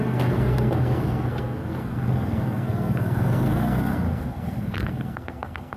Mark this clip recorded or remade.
remade